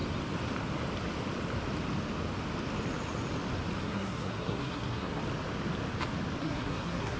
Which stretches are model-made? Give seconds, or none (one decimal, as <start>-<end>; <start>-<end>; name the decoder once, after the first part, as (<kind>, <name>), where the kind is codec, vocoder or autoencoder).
3.8-5.2 (codec, SNAC); 6.4-7.2